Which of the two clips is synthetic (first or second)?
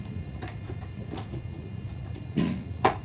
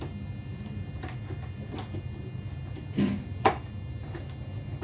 first